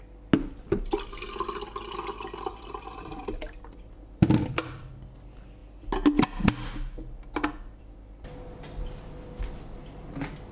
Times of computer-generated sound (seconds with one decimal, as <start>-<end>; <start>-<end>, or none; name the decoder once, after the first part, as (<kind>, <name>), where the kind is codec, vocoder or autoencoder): 2.5-4.9 (vocoder, BigVGAN v2)